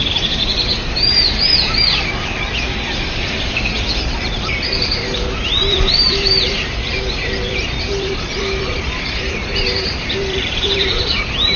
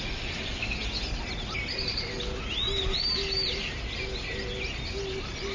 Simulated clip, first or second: first